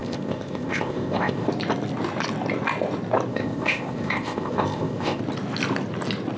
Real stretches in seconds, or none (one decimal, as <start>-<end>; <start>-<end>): 1.5-3.3; 5.2-6.4